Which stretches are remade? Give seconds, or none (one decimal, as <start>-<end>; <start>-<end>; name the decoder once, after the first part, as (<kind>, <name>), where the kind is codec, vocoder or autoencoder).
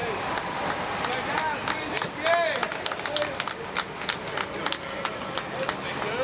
none